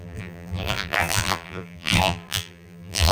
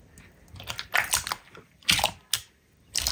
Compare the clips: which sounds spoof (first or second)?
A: first